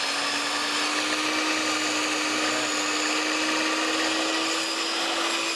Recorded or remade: recorded